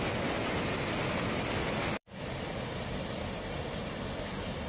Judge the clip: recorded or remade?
recorded